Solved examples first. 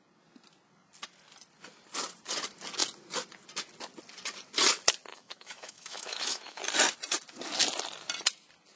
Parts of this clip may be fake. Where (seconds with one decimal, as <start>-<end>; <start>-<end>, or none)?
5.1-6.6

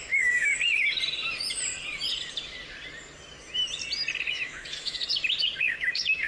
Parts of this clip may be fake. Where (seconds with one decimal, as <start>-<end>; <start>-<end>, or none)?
0.0-0.5; 4.3-5.0; 5.6-6.3

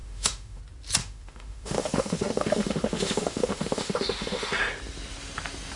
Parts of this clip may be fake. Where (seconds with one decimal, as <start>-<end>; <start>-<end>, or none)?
0.0-0.6; 1.0-4.5

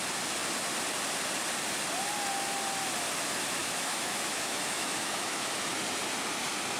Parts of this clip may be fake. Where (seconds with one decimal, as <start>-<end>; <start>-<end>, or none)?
3.6-5.5

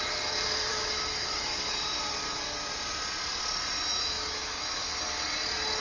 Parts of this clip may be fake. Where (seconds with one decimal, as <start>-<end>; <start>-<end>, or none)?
0.7-2.0; 3.9-5.0

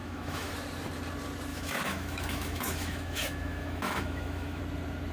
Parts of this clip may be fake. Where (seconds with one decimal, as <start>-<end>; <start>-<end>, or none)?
0.0-0.5; 1.5-4.6